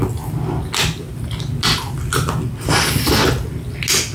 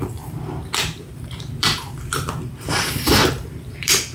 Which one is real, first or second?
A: first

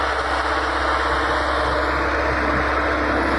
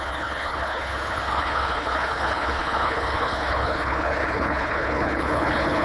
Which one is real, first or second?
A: first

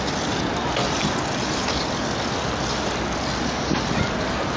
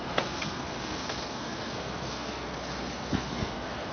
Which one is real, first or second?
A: first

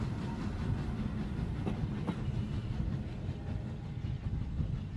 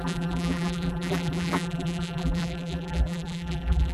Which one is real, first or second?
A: first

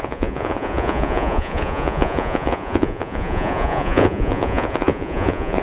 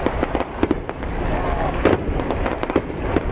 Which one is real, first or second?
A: second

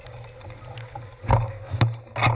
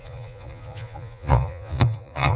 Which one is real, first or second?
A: first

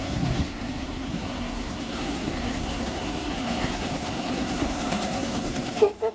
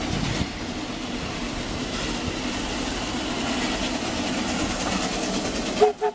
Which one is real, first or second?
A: second